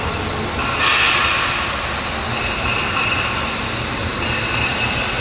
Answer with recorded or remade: recorded